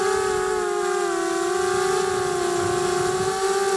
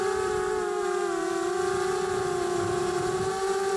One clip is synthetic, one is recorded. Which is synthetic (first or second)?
second